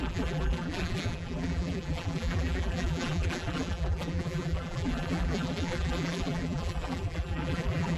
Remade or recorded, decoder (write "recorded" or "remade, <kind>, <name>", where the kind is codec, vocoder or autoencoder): remade, vocoder, BigVGAN v2